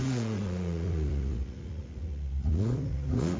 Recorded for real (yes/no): no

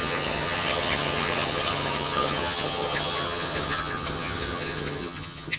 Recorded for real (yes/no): no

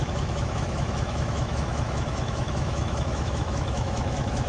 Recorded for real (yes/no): no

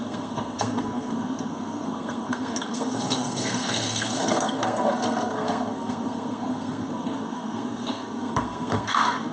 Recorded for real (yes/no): no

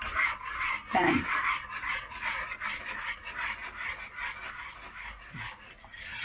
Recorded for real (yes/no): yes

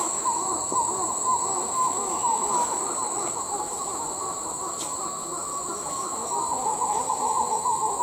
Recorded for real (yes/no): no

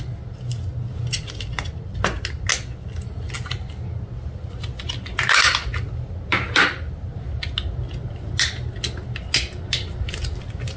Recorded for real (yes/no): yes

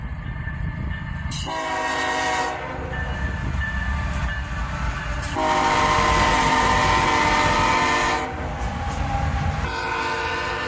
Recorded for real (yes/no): yes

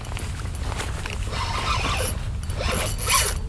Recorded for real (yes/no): yes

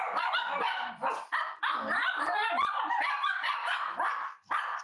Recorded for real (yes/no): yes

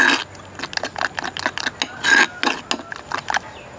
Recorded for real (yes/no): yes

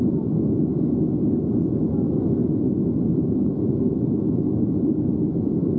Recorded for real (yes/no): yes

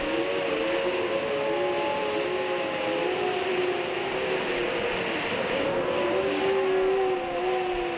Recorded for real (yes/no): yes